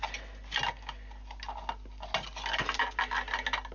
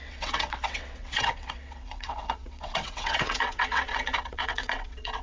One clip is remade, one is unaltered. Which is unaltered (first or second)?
first